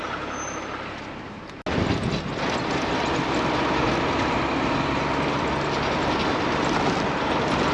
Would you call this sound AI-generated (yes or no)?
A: no